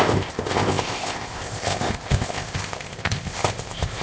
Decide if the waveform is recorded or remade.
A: remade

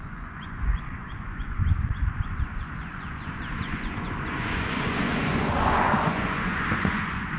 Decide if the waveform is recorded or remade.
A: remade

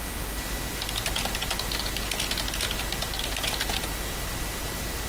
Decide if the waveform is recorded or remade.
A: recorded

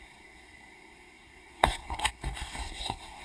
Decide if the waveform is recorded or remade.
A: remade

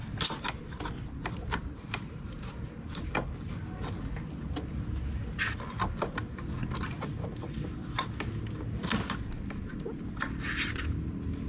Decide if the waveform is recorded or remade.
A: recorded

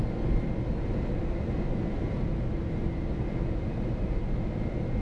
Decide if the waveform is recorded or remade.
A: recorded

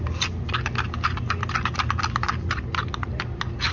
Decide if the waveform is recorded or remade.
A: recorded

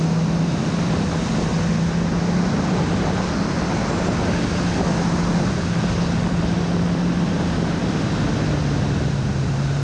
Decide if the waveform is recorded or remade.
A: recorded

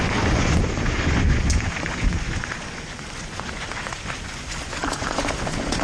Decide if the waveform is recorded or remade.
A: remade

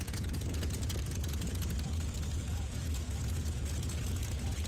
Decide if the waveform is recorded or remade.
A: remade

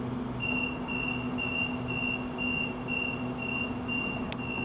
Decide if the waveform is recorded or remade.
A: recorded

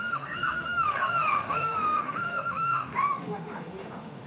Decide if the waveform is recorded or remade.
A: remade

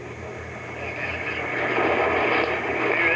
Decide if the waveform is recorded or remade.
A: recorded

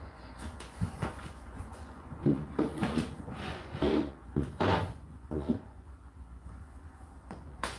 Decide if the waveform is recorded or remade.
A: remade